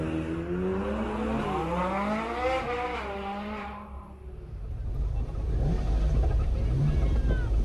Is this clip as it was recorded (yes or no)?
yes